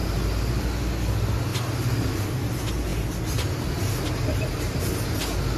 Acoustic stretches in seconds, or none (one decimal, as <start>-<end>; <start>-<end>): 0.0-5.6